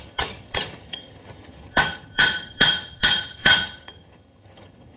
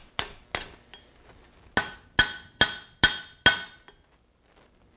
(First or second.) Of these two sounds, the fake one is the first